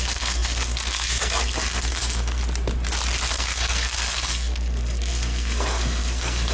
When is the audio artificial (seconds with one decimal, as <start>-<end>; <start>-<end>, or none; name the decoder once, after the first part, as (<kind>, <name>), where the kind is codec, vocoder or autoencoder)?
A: 0.0-2.4 (codec, SNAC); 3.3-6.5